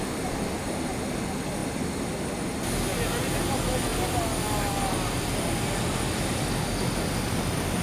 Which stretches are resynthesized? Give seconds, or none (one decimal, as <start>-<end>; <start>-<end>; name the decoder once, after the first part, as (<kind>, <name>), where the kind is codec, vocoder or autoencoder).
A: 1.6-2.3 (vocoder, BigVGAN v2)